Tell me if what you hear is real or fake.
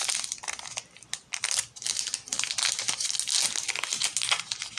real